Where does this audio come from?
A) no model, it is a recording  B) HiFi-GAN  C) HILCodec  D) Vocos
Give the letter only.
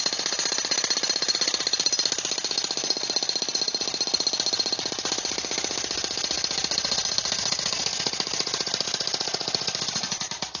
A